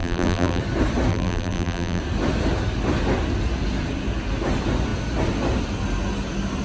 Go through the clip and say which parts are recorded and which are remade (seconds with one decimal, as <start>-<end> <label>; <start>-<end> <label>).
0.0-0.6 remade; 0.6-1.1 recorded; 1.1-2.0 remade; 2.0-6.6 recorded